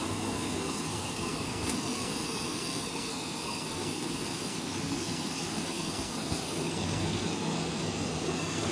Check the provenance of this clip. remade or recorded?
remade